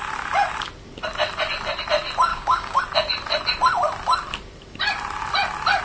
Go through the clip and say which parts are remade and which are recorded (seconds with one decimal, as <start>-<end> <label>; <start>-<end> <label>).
0.0-2.3 recorded; 2.3-2.8 remade; 2.8-5.8 recorded